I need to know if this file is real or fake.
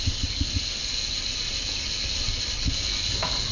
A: real